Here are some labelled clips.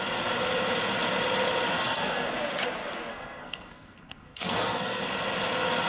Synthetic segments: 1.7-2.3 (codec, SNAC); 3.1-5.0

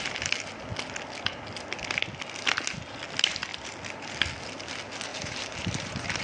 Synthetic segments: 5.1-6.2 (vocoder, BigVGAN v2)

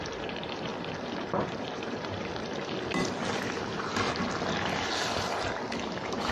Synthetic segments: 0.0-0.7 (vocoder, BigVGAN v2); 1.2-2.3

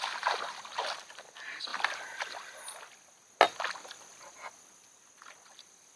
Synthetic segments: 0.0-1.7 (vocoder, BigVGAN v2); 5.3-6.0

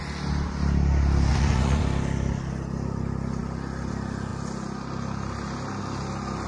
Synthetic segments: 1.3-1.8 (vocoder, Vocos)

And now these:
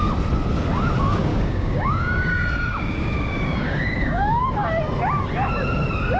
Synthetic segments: 1.3-2.3 (codec, DAC); 2.7-4.4